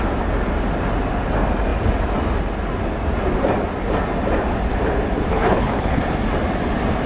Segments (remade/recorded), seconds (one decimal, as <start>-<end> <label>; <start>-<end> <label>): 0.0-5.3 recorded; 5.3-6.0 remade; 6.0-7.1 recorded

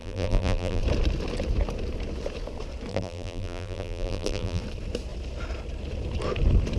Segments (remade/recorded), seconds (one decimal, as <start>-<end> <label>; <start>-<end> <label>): 0.0-0.8 remade; 0.8-2.9 recorded; 2.9-4.6 remade; 4.6-6.8 recorded

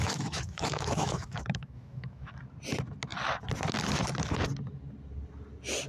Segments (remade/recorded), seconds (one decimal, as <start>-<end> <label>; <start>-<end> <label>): 0.0-2.3 remade; 2.3-5.9 recorded

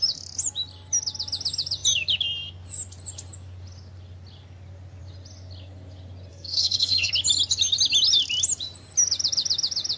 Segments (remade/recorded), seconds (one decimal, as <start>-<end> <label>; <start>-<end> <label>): 0.0-6.3 recorded; 6.3-7.1 remade; 7.1-10.0 recorded

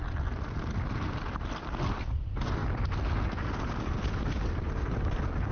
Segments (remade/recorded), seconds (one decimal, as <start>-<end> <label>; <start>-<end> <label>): 0.0-5.5 recorded